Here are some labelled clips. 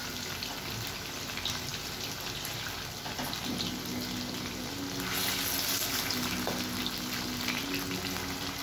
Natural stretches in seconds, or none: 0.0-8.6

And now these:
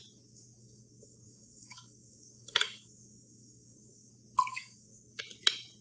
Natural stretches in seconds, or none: 0.0-0.6; 4.1-4.5; 5.2-5.8

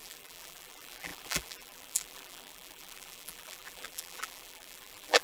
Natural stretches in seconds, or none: none